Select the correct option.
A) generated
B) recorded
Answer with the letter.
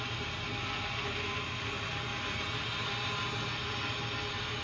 B